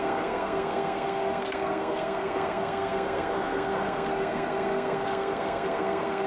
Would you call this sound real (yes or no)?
no